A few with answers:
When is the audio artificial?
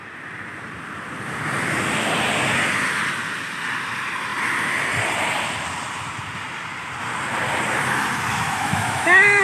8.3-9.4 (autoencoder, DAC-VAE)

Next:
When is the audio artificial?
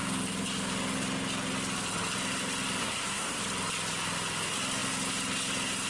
2.8-3.4 (codec, SNAC)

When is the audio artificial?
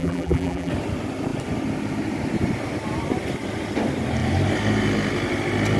0.0-0.7 (vocoder, BigVGAN v2)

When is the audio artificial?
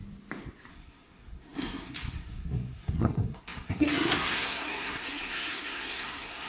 0.7-6.5 (codec, SNAC)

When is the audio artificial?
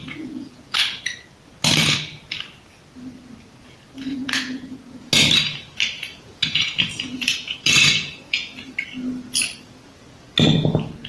0.0-1.0 (vocoder, Vocos); 4.1-5.1; 6.1-8.7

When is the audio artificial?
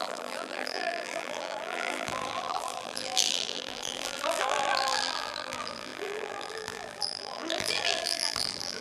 0.0-8.8 (vocoder, BigVGAN v2)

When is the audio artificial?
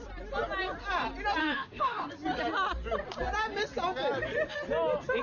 1.4-2.1 (autoencoder, DAC-VAE)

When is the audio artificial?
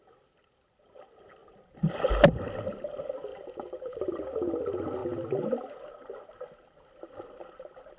3.3-4.1 (vocoder, BigVGAN v2)